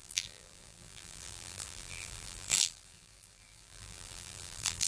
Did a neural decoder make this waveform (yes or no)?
yes